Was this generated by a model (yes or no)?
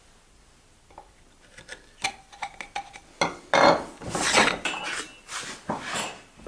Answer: no